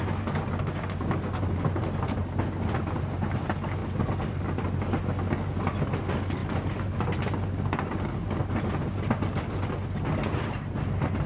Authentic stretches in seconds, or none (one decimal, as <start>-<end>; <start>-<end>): 0.0-11.3